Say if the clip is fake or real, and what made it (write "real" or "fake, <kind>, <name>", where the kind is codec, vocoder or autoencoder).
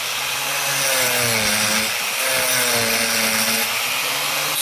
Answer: real